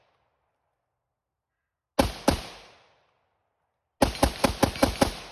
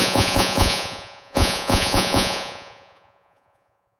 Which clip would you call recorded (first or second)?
first